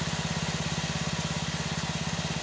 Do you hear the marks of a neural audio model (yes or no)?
no